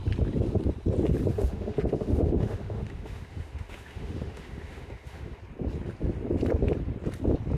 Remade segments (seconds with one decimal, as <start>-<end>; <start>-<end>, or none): 1.3-5.4